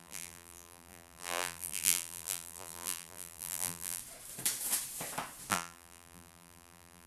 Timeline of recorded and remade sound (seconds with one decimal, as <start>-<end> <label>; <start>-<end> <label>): 0.0-4.0 remade; 4.0-5.5 recorded; 5.5-7.1 remade